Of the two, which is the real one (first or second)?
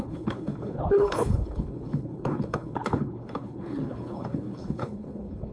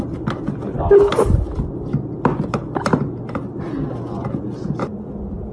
second